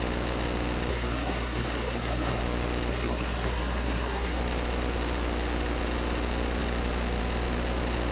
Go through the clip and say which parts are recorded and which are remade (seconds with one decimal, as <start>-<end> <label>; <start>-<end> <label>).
0.0-0.9 recorded; 0.9-2.4 remade; 2.4-2.9 recorded; 2.9-4.4 remade; 4.4-8.1 recorded